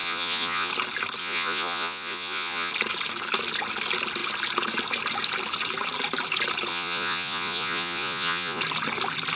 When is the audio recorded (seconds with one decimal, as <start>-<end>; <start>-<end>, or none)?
0.7-1.2; 2.7-6.7; 8.6-9.3